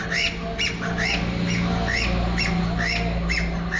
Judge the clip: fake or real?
real